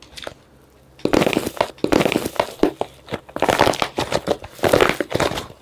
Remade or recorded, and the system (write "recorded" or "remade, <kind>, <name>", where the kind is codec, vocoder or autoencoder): recorded